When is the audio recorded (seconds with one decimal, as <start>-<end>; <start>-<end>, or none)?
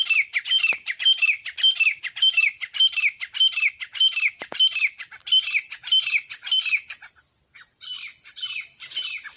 0.0-9.4